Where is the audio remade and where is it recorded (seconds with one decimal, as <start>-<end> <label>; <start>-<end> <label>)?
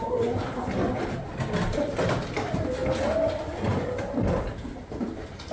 0.0-5.5 recorded